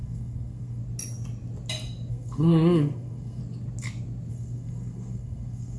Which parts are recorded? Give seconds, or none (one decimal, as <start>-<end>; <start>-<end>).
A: 0.8-2.1; 3.4-4.3